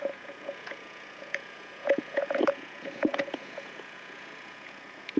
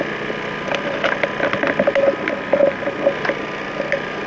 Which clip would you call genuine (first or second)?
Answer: second